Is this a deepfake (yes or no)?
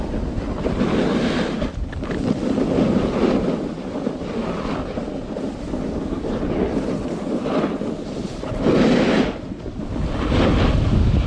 no